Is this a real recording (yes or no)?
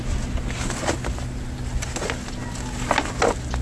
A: yes